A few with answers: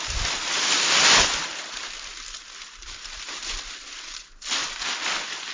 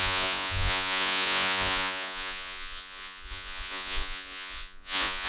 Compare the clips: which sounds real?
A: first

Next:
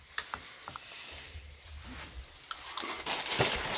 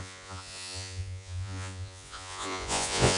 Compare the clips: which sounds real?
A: first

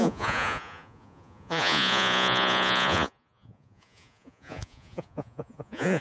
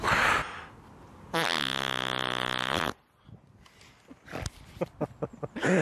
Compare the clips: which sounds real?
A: second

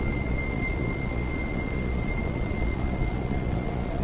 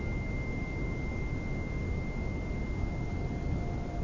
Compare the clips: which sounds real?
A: second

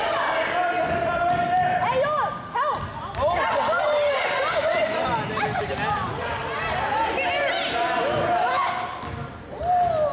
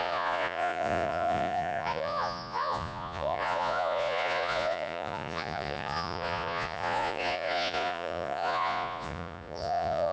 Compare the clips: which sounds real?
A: first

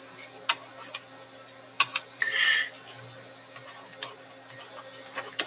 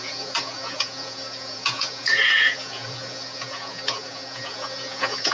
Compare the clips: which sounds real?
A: first